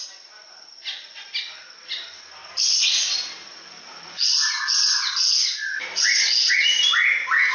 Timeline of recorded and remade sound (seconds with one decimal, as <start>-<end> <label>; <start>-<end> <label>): 0.0-7.5 recorded